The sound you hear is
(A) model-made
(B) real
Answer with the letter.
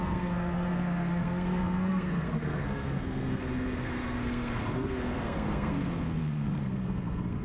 A